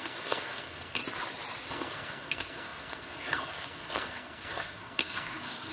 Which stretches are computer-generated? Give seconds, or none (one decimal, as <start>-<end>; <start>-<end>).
0.0-1.0; 1.7-5.7